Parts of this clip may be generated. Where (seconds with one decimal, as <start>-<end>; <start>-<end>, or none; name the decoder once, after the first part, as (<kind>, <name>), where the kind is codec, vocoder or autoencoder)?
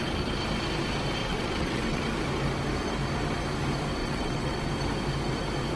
1.2-2.0 (vocoder, WaveNeXt); 4.0-4.7